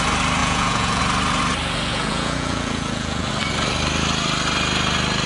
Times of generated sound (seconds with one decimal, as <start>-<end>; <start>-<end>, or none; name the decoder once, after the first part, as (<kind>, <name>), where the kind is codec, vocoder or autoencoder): 0.4-1.0 (vocoder, Vocos); 1.9-3.3